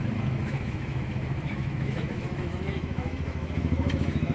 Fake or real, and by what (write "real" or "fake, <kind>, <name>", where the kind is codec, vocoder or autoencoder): fake, autoencoder, DAC-VAE